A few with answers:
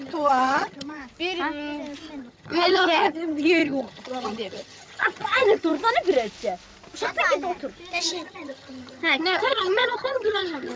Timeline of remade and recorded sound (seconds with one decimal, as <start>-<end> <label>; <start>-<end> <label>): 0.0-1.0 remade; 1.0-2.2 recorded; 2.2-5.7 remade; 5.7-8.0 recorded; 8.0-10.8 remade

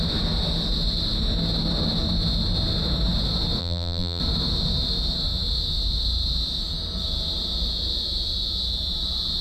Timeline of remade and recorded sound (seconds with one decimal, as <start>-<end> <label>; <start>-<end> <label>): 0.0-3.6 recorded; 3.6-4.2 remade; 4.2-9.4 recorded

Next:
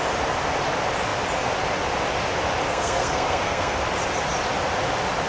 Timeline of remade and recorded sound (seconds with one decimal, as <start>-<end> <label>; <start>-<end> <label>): 0.0-2.7 recorded; 2.7-3.8 remade; 3.8-5.3 recorded

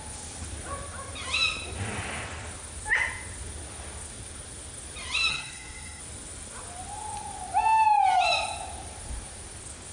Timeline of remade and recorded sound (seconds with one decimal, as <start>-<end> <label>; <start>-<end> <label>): 0.0-5.3 recorded; 5.3-6.0 remade; 6.0-9.9 recorded

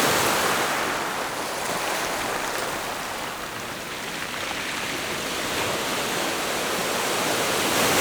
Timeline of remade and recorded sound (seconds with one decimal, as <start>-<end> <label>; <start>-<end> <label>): 0.0-8.0 recorded

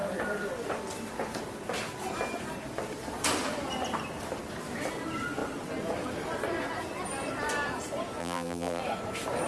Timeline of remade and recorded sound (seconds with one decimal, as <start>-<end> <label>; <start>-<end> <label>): 0.0-8.2 recorded; 8.2-8.8 remade; 8.8-9.5 recorded

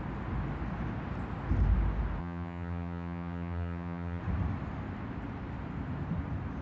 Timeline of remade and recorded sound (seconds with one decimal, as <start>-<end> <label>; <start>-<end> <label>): 0.0-2.2 recorded; 2.2-4.2 remade; 4.2-6.6 recorded

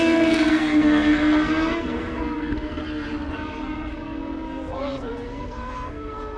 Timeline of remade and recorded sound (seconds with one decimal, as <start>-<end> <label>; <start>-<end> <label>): 0.0-2.8 remade; 2.8-3.3 recorded; 3.3-6.4 remade